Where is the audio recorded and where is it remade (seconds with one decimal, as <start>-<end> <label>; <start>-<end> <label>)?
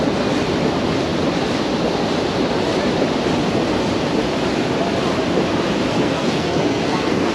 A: 0.0-5.9 recorded; 5.9-7.3 remade